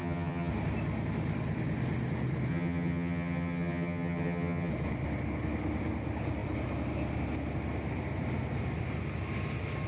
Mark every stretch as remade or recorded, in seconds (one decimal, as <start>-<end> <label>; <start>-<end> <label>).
0.0-0.5 remade; 0.5-2.5 recorded; 2.5-4.7 remade; 4.7-9.9 recorded